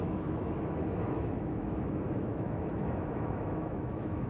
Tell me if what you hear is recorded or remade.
remade